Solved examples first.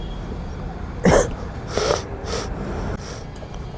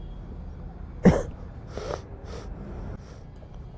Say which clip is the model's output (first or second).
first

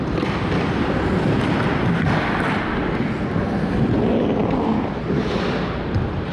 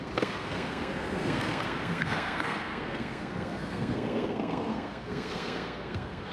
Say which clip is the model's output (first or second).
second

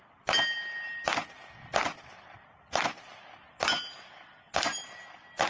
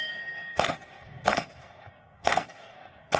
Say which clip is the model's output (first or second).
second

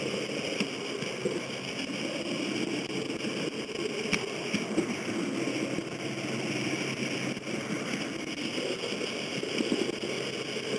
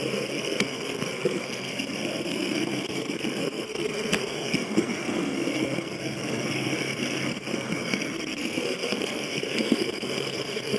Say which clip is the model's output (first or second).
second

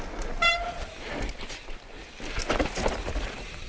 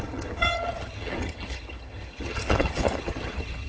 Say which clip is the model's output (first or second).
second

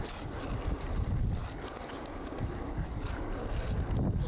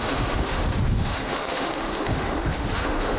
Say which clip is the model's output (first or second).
second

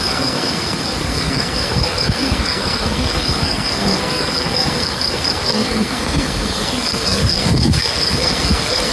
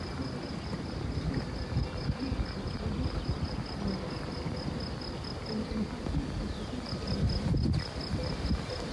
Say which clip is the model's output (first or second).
first